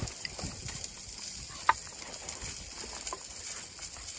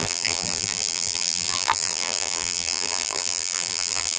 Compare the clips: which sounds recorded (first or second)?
first